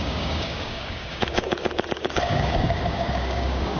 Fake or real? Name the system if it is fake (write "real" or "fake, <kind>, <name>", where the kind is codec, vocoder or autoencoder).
fake, codec, DAC